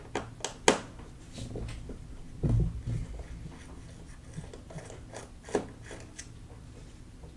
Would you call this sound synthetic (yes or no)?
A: no